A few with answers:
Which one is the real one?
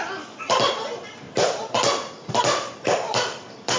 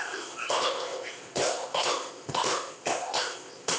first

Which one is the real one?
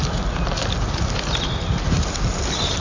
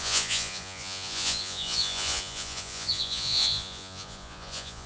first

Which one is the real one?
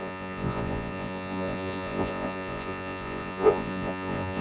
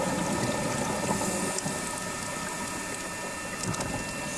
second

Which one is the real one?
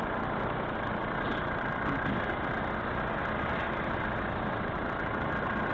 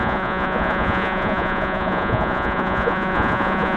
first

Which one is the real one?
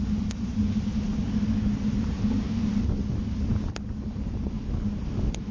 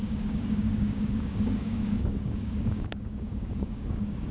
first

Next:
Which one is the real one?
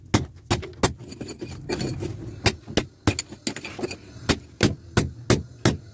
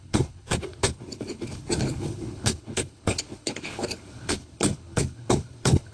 first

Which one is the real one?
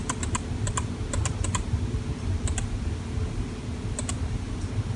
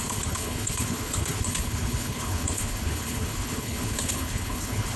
first